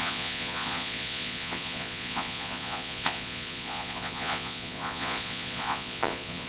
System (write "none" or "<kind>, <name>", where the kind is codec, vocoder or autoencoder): vocoder, Vocos